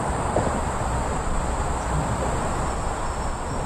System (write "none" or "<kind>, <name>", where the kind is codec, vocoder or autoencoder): none